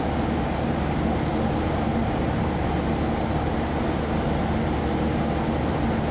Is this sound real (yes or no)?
yes